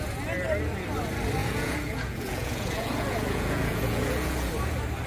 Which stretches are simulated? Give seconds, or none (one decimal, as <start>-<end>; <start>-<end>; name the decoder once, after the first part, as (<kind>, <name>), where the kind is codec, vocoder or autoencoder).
1.4-4.5 (vocoder, Vocos)